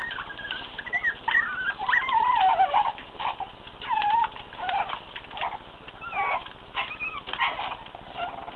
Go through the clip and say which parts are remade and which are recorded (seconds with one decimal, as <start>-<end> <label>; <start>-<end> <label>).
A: 0.0-6.4 recorded; 6.4-7.2 remade; 7.2-8.6 recorded